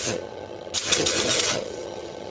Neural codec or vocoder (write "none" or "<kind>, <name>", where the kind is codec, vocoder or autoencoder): vocoder, HiFi-GAN